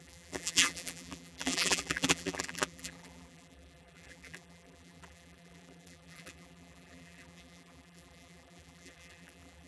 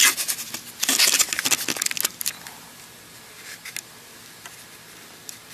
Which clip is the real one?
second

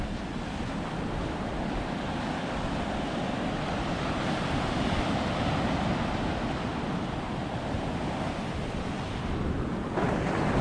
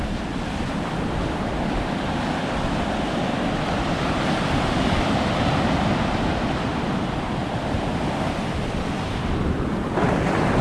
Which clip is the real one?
first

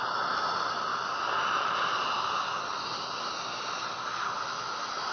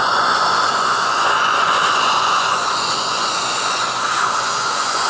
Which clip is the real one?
first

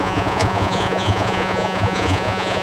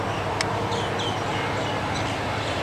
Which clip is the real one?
second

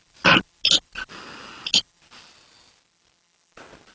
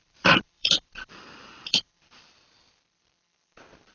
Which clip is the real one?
first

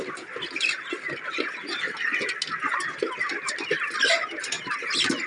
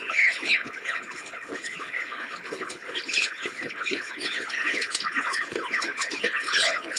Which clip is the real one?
first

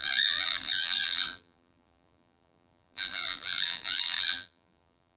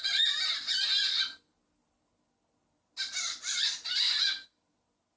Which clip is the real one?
second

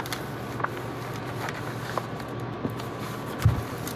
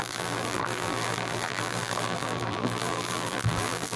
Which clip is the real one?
first